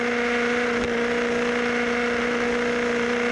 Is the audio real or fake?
real